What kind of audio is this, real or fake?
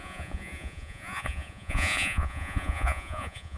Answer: fake